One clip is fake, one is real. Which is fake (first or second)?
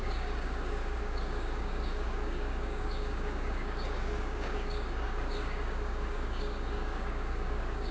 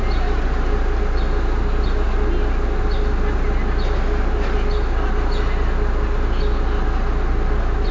first